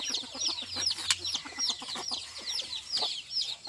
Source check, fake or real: real